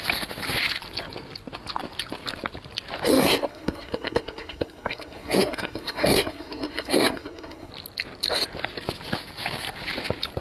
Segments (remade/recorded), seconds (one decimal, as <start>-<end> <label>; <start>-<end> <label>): 0.0-3.1 recorded; 3.1-7.7 remade; 7.7-10.4 recorded

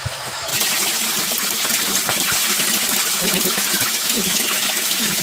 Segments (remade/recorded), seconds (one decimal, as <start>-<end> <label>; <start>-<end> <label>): 0.0-0.5 remade; 0.5-3.1 recorded; 3.1-5.2 remade

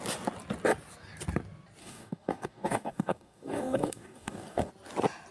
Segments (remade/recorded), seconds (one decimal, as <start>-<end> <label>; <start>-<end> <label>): 0.0-1.8 recorded; 1.8-4.7 remade; 4.7-5.3 recorded

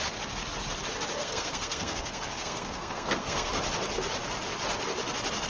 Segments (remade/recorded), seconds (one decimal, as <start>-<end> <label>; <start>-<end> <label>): 0.0-1.2 recorded; 1.2-3.5 remade; 3.5-5.5 recorded

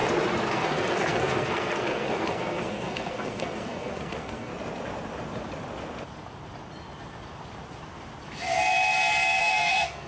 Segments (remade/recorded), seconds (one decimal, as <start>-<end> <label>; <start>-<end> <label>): 0.0-0.5 recorded; 0.5-4.5 remade; 4.5-9.4 recorded; 9.4-10.1 remade

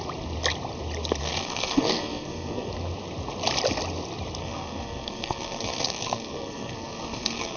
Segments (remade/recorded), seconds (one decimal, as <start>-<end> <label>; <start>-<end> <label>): 0.0-1.2 recorded; 1.2-2.7 remade; 2.7-4.4 recorded; 4.4-7.6 remade

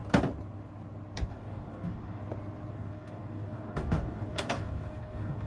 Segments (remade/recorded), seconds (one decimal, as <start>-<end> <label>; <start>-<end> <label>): 0.0-1.3 recorded; 1.3-2.2 remade; 2.2-2.7 recorded; 2.7-5.5 remade

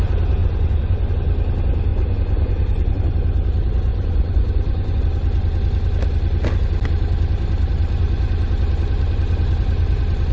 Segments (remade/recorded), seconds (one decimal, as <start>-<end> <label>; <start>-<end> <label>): 0.0-0.4 recorded; 0.4-1.1 remade; 1.1-1.9 recorded; 1.9-3.0 remade; 3.0-3.9 recorded; 3.9-5.0 remade; 5.0-10.3 recorded